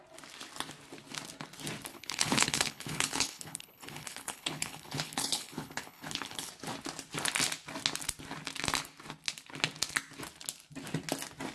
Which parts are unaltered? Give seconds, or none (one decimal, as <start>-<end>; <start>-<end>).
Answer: 0.0-1.9; 6.5-11.5